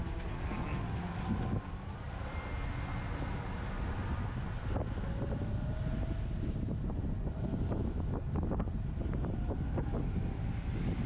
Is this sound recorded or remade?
recorded